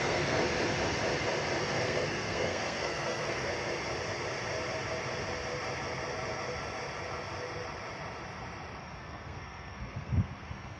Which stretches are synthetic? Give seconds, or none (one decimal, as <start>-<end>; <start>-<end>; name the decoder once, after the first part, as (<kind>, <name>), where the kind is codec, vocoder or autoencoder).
0.0-0.4 (codec, SNAC); 1.6-3.5; 8.8-10.8